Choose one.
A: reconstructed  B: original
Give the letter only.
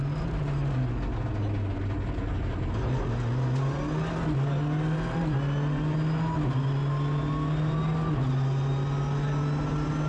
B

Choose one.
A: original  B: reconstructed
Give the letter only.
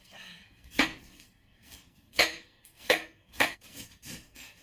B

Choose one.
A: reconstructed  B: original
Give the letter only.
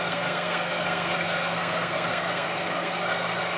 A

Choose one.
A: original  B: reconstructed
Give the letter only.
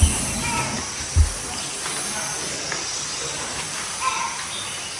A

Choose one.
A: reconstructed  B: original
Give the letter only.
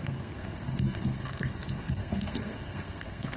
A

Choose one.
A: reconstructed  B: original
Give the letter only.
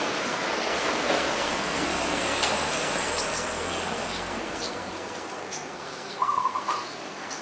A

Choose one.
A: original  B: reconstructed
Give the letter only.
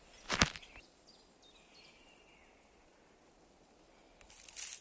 A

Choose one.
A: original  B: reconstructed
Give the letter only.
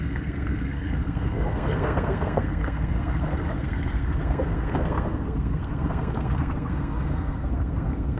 B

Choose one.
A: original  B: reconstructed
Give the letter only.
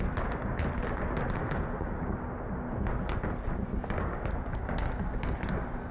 A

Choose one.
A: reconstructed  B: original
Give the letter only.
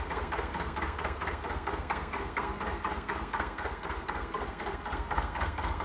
A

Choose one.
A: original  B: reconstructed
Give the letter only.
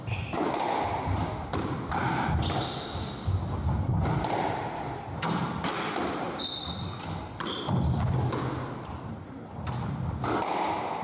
A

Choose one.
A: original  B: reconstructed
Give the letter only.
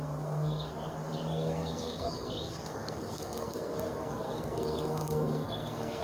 B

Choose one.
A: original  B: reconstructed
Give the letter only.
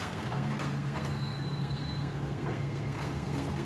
B